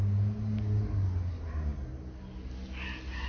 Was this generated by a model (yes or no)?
no